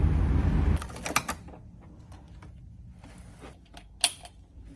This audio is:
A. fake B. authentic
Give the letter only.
B